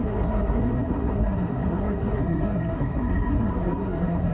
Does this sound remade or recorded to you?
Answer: remade